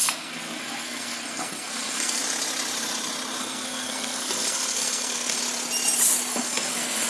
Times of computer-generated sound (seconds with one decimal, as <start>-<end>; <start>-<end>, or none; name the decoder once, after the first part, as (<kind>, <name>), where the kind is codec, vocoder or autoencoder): 0.0-2.2 (codec, SNAC); 3.4-5.4; 6.3-7.1